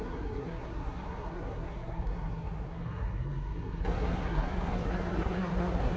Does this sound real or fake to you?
fake